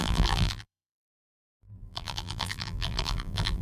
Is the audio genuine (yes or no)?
no